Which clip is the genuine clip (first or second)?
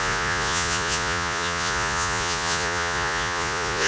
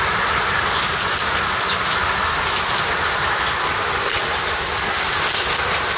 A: second